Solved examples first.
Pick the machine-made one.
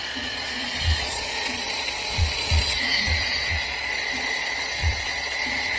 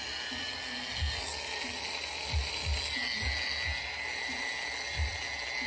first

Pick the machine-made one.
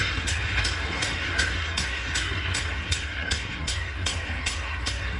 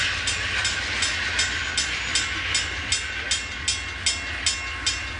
first